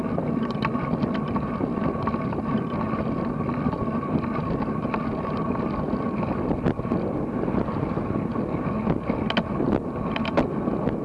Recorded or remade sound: recorded